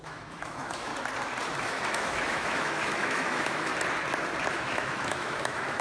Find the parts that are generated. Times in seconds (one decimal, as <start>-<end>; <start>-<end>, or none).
0.0-0.9; 1.6-3.7; 4.5-5.8